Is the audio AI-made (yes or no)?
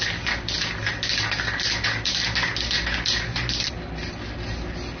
no